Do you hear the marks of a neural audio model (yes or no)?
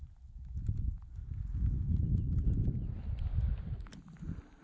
no